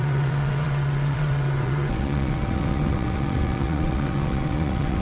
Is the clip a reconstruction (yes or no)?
yes